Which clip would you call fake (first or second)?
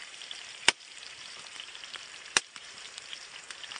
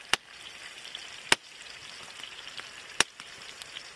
first